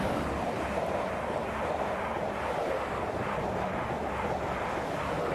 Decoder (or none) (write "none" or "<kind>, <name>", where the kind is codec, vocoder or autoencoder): none